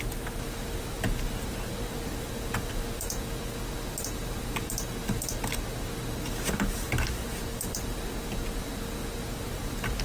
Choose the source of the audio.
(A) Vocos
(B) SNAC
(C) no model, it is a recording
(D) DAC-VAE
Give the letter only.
C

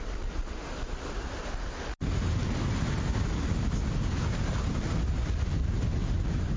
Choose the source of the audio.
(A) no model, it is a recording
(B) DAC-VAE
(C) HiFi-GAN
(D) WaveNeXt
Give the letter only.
A